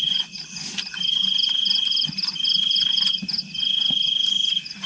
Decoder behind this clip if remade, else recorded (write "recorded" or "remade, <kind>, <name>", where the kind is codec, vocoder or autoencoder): recorded